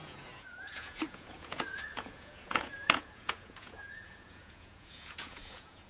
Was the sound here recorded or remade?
remade